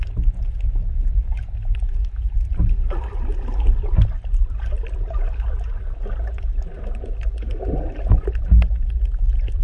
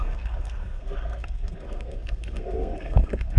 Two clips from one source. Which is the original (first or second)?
first